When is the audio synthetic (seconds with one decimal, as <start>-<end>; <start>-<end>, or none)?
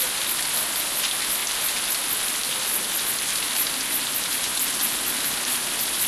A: none